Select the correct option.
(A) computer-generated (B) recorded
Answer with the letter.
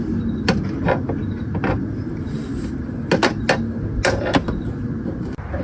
B